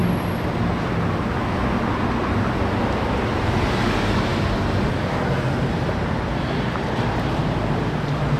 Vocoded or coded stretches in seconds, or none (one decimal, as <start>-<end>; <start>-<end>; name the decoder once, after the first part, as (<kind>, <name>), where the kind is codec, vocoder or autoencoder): 3.2-4.3 (vocoder, BigVGAN v2); 5.0-8.4